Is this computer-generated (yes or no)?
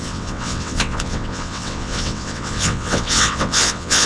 yes